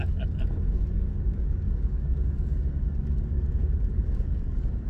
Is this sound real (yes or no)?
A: no